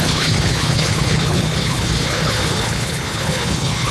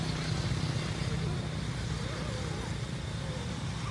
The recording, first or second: second